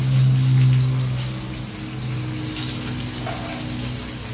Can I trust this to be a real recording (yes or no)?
yes